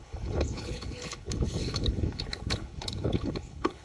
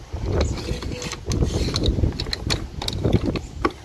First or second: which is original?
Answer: second